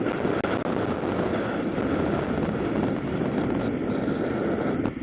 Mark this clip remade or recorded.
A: recorded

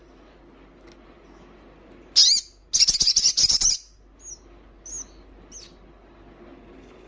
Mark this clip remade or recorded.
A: recorded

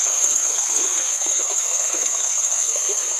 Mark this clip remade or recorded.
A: remade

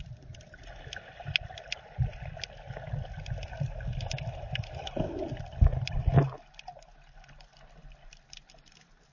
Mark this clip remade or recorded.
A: recorded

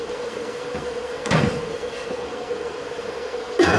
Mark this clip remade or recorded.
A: remade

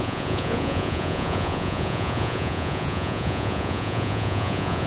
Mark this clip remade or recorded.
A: remade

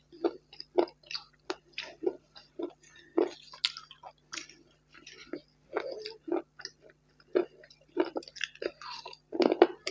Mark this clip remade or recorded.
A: recorded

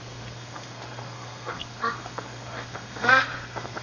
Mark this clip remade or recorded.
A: remade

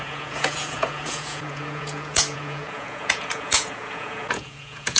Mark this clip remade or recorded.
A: remade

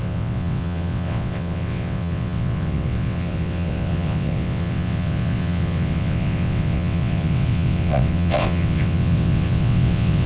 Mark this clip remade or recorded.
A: remade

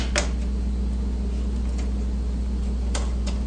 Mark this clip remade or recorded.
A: recorded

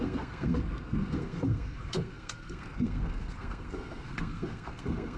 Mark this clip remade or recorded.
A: remade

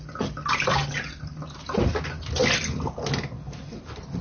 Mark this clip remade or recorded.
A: recorded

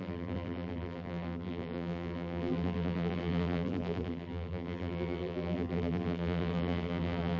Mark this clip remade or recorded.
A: remade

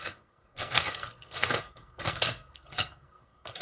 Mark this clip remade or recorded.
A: remade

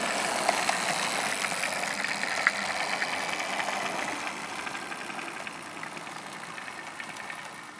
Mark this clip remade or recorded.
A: recorded